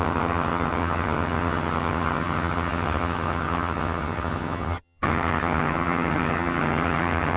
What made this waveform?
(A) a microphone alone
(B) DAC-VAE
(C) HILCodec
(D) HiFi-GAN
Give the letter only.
D